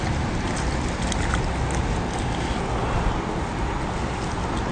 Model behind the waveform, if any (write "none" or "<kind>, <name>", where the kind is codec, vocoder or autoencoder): none